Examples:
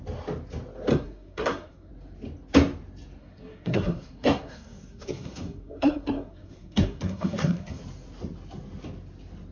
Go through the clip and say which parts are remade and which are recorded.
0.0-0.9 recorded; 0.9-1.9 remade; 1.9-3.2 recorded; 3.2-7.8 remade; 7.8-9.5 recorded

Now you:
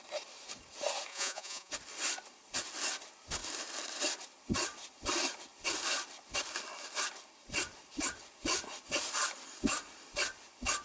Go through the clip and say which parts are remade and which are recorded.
0.0-1.1 recorded; 1.1-1.7 remade; 1.7-10.8 recorded

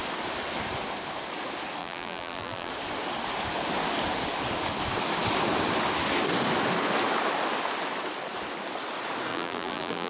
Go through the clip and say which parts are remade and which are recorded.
0.0-1.8 recorded; 1.8-2.7 remade; 2.7-9.3 recorded; 9.3-10.1 remade

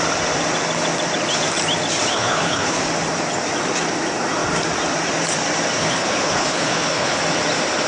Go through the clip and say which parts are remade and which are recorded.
0.0-2.1 recorded; 2.1-2.8 remade; 2.8-5.8 recorded; 5.8-7.2 remade; 7.2-7.9 recorded

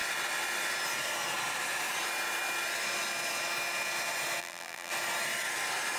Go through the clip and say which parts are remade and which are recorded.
0.0-4.4 recorded; 4.4-4.9 remade; 4.9-6.0 recorded